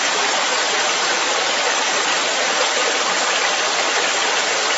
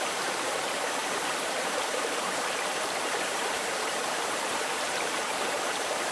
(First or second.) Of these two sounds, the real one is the first